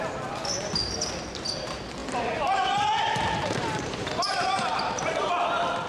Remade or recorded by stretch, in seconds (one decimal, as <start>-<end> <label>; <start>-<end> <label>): 0.0-2.0 recorded; 2.0-5.3 remade; 5.3-5.9 recorded